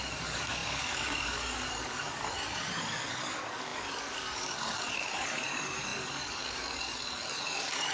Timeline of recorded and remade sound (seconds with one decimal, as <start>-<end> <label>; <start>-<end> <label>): 0.0-7.9 remade